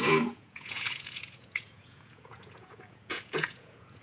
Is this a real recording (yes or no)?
no